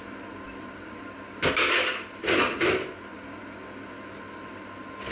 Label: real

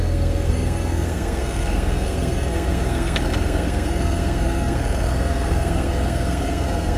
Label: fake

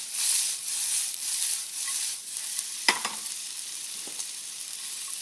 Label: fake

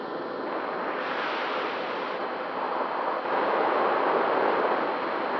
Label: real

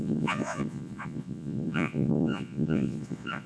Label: fake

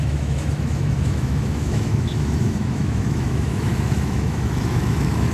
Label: fake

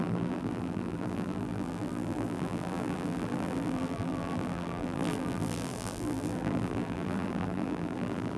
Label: fake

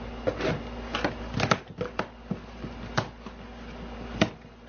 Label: real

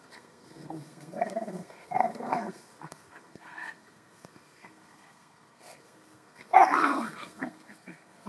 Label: fake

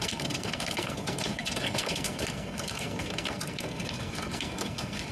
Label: fake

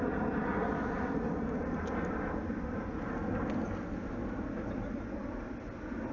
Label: real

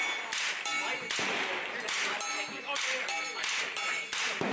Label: real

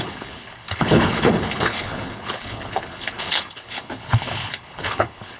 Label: fake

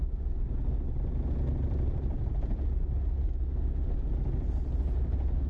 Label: real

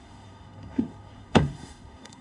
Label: fake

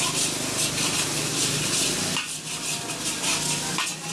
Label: real